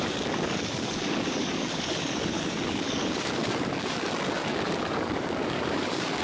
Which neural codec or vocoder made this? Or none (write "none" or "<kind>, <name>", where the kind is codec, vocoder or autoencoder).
codec, DAC